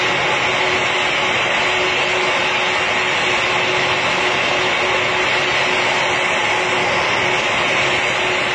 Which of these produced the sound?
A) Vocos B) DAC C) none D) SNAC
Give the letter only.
C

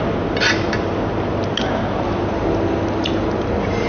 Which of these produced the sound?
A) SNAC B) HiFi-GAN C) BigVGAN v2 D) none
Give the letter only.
D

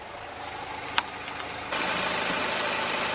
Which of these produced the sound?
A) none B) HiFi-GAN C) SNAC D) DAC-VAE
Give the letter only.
A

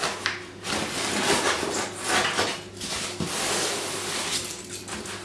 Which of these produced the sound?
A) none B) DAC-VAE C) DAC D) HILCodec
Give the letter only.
A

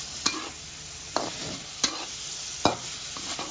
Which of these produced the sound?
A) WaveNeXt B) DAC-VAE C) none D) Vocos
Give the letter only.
C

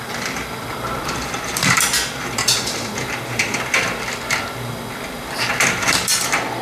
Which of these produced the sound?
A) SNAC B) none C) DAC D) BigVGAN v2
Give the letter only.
D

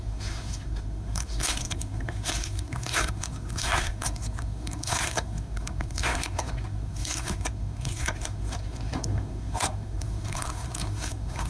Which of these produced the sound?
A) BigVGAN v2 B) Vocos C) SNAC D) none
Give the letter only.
C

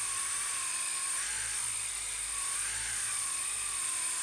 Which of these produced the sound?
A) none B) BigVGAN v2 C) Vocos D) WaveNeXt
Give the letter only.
A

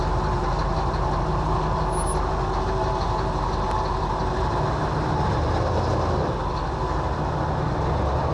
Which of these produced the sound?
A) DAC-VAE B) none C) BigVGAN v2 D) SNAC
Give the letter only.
B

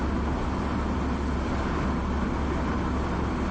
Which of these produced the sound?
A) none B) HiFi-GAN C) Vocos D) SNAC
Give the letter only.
A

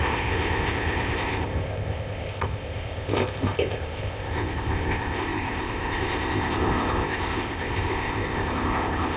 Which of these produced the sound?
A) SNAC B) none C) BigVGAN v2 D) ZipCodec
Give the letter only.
D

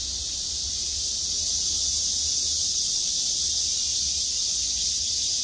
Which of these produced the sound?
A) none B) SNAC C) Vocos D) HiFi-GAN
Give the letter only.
A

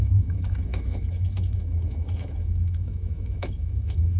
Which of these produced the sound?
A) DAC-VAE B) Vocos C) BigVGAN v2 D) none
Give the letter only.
A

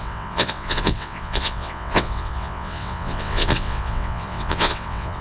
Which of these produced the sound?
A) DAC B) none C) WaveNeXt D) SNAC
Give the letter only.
C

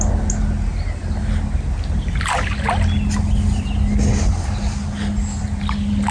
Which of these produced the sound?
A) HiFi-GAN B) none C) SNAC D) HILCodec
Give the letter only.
B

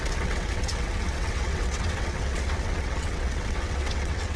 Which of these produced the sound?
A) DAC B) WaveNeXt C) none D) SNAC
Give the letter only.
B